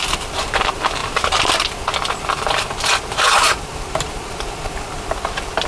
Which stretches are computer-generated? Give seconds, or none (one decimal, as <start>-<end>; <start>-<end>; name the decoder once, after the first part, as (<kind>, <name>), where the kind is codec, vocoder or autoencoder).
none